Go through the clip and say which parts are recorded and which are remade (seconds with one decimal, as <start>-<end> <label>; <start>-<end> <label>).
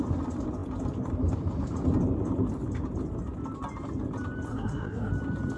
0.0-4.5 recorded; 4.5-5.1 remade; 5.1-5.6 recorded